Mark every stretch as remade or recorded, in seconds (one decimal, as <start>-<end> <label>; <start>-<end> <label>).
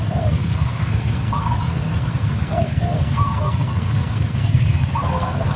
0.0-5.6 remade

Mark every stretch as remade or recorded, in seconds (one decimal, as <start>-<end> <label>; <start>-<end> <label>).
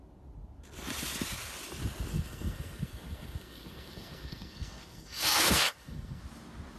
0.0-2.1 recorded; 2.1-6.2 remade; 6.2-6.8 recorded